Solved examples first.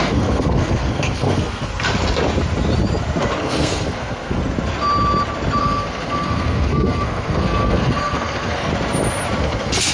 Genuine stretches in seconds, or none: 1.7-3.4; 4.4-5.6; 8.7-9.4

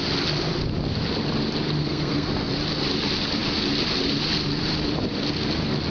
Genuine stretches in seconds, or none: 0.0-1.8; 2.5-5.9

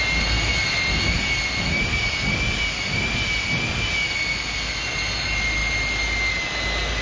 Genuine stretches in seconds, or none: 0.0-7.0

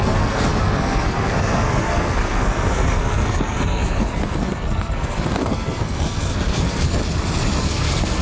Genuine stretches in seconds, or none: 7.0-7.6

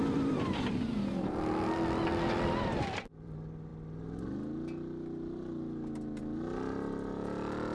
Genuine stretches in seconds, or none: 0.0-7.7